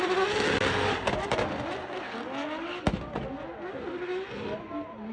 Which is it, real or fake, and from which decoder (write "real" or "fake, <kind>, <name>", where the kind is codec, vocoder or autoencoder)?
real